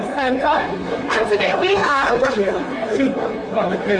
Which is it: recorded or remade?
remade